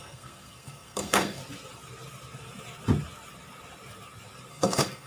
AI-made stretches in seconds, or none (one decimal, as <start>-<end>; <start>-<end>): 0.0-1.4; 4.5-5.1

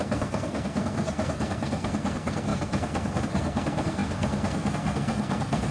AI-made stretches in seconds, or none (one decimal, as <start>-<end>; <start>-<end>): 0.0-5.7

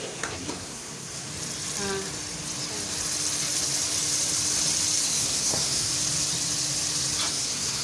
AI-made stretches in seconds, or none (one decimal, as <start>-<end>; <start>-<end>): 0.0-1.3; 5.0-5.9; 7.3-7.8

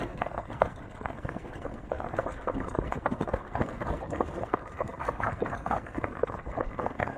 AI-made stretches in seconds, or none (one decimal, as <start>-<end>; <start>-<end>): 0.0-7.2

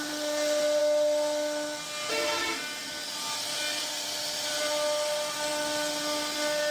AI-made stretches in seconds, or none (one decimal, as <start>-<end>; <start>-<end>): none

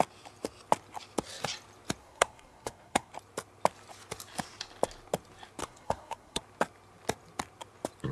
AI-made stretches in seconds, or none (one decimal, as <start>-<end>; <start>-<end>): 2.0-3.1; 5.6-6.4